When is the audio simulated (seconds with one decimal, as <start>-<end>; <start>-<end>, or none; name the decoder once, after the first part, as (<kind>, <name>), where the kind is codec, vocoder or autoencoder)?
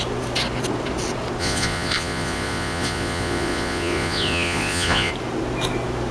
1.4-5.1 (vocoder, Vocos)